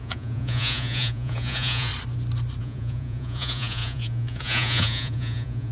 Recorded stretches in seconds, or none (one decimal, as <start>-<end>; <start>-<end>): 1.9-2.6